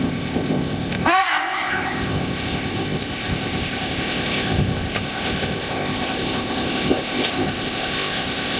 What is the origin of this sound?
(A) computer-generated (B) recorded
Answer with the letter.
A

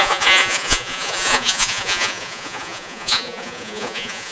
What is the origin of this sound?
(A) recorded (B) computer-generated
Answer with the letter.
B